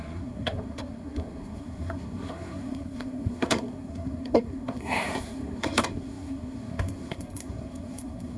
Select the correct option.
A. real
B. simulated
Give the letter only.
B